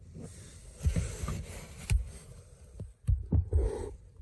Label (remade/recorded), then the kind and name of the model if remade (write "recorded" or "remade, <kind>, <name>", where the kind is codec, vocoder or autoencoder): recorded